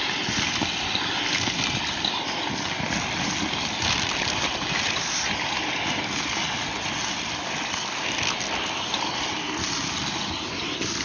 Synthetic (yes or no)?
no